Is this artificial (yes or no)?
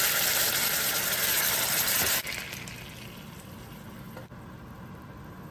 no